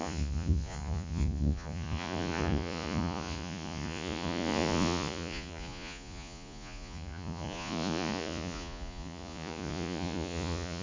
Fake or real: fake